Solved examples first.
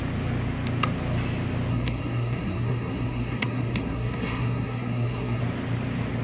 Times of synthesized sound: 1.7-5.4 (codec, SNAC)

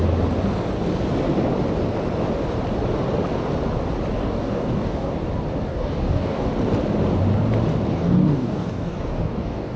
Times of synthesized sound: 4.2-5.2 (codec, DAC); 5.7-6.5; 7.9-9.8

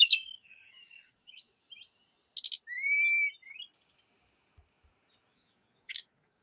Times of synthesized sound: 0.0-1.5 (codec, DAC); 5.3-6.4

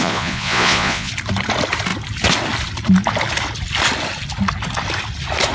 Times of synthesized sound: 0.0-1.1 (vocoder, Vocos)

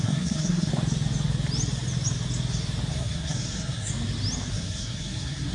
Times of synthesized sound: 0.0-0.7 (codec, SNAC); 2.9-3.9; 4.5-5.5

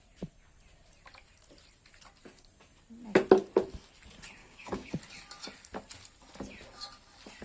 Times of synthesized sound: 4.4-4.9 (codec, DAC)